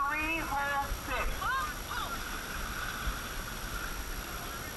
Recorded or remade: recorded